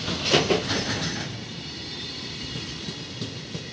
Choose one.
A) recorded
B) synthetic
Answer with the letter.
A